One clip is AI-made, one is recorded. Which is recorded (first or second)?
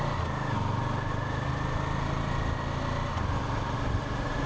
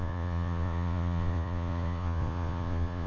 first